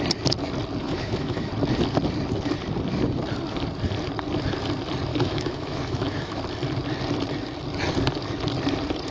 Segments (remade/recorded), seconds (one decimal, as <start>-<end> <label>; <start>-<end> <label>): 0.0-0.8 recorded; 0.8-1.5 remade; 1.5-5.1 recorded; 5.1-6.4 remade; 6.4-9.1 recorded

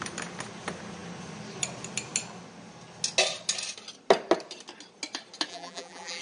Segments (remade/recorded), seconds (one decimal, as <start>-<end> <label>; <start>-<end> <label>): 0.0-5.5 recorded; 5.5-6.2 remade

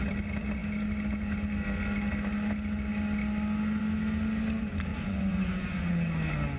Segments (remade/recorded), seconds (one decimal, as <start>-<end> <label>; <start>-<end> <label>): 0.0-4.9 recorded; 4.9-5.9 remade; 5.9-6.6 recorded

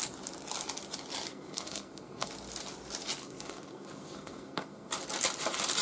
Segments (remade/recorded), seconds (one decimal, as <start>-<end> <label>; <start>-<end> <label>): 0.0-1.3 recorded; 1.3-2.3 remade; 2.3-3.2 recorded; 3.2-4.9 remade; 4.9-5.8 recorded

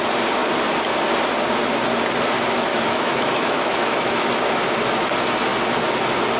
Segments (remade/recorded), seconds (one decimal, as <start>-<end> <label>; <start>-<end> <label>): 0.0-2.7 recorded; 2.7-4.3 remade; 4.3-6.4 recorded